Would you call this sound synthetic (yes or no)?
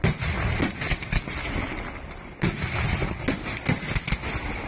no